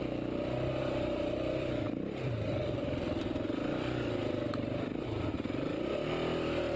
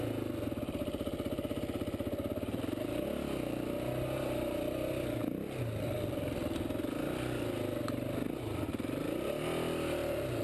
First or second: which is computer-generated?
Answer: first